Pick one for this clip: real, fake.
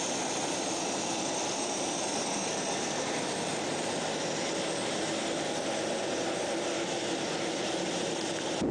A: fake